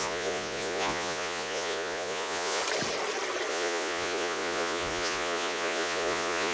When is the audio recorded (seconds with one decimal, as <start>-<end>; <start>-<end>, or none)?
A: 2.6-3.5